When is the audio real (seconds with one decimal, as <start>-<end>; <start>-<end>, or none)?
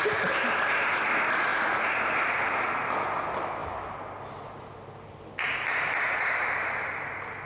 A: 0.0-1.5; 2.0-7.5